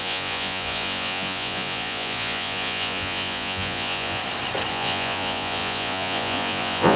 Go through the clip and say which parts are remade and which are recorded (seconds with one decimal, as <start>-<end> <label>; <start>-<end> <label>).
0.0-4.2 remade; 4.2-4.7 recorded; 4.7-7.0 remade

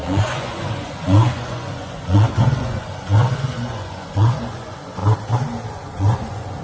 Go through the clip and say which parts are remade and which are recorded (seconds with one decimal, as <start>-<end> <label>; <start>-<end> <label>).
0.0-5.0 remade; 5.0-5.7 recorded; 5.7-6.6 remade

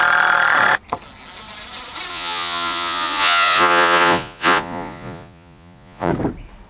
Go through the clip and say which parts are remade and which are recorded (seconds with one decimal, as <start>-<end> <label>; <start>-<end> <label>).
0.0-2.1 recorded; 2.1-6.1 remade; 6.1-6.7 recorded